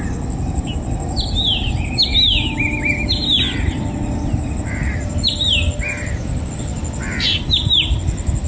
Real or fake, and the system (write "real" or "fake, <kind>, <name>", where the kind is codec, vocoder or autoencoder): real